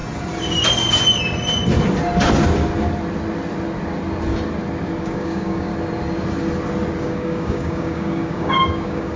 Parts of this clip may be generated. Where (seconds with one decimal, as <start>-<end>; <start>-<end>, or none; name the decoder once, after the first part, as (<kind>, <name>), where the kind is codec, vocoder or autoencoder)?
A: 5.0-5.7 (codec, DAC); 7.0-9.2